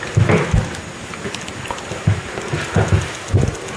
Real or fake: real